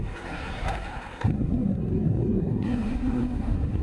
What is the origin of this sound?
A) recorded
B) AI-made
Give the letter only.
B